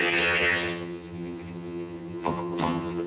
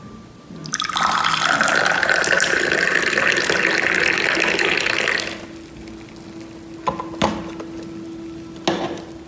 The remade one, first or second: first